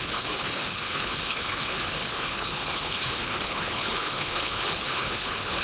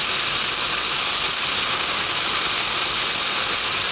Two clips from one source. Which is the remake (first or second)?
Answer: first